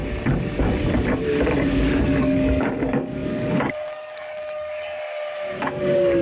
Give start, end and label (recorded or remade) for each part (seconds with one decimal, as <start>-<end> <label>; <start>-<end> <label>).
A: 0.0-1.7 recorded; 1.7-5.0 remade; 5.0-5.6 recorded; 5.6-6.2 remade